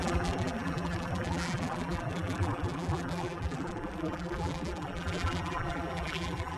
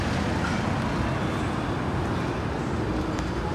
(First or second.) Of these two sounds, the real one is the second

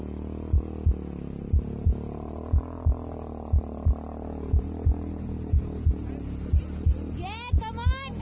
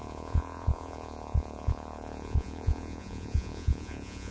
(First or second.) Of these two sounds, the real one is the first